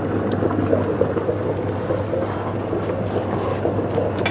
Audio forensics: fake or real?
real